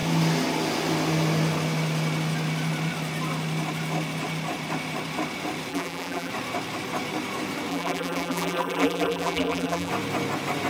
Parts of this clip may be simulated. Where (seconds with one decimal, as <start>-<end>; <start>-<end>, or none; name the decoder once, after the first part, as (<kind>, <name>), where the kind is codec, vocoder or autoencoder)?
5.7-6.3 (vocoder, BigVGAN v2); 7.7-9.9